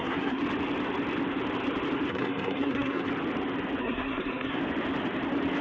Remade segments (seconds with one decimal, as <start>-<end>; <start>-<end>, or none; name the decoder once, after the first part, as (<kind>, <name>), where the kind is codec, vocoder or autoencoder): 0.0-0.4 (codec, SNAC); 2.1-3.1; 3.8-4.6